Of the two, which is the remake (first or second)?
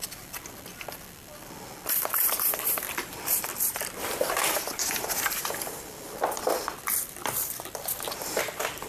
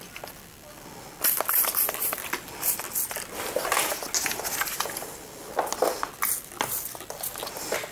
first